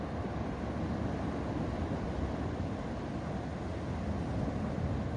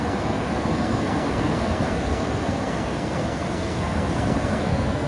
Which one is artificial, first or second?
second